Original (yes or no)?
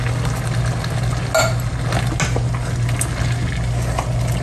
yes